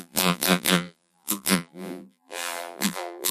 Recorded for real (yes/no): no